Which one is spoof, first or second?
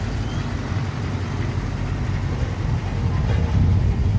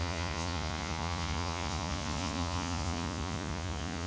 second